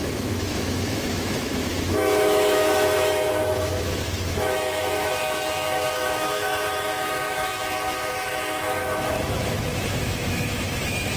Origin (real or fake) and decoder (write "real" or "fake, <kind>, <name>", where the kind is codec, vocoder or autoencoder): fake, autoencoder, DAC-VAE